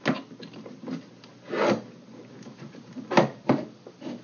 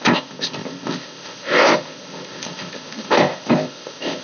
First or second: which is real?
first